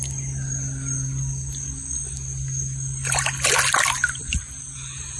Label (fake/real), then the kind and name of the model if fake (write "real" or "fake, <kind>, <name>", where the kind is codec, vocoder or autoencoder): real